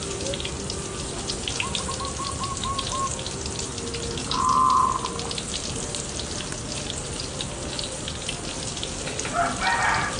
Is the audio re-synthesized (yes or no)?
no